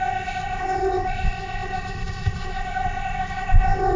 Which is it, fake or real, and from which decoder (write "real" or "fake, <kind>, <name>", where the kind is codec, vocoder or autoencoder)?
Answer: fake, codec, ZipCodec